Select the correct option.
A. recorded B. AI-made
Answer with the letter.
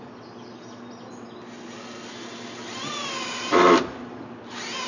A